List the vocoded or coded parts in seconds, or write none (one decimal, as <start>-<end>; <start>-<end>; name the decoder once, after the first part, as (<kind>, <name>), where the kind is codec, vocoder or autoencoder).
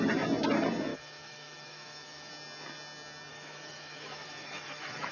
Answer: 0.9-2.3 (autoencoder, DAC-VAE); 3.3-5.1